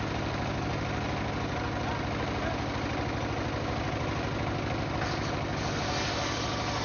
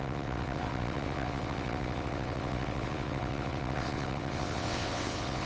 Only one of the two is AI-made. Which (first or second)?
second